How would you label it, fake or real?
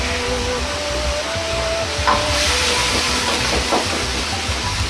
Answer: real